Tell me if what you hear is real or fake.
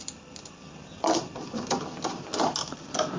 real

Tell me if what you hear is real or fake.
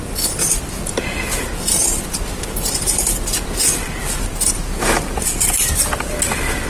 real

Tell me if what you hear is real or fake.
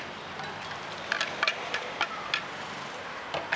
real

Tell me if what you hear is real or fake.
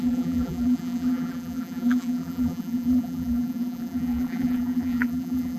fake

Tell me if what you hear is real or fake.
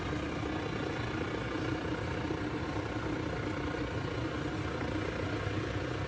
real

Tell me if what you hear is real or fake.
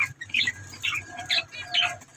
real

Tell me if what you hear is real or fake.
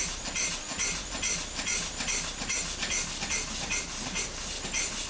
real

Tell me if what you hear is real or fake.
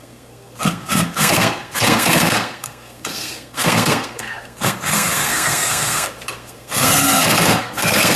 fake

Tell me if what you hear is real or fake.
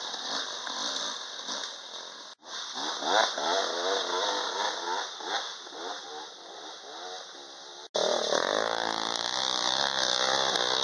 real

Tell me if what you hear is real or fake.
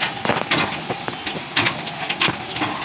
real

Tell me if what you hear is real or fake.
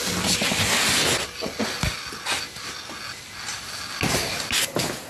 real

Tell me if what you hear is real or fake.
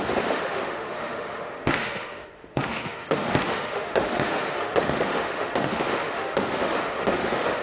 fake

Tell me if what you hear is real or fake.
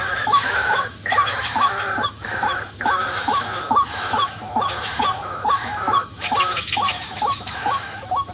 fake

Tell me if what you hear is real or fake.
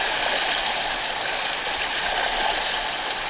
real